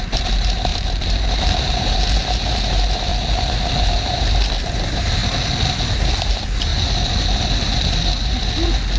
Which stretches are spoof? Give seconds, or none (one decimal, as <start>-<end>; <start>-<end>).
0.0-3.1; 3.8-5.2; 5.9-6.7; 8.0-9.0